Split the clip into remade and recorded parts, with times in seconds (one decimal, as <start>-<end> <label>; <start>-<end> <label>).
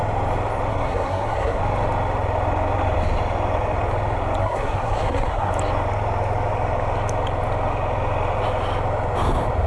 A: 0.0-0.7 recorded; 0.7-1.6 remade; 1.6-4.4 recorded; 4.4-5.5 remade; 5.5-9.7 recorded